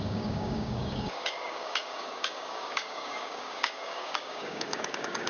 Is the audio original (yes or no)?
no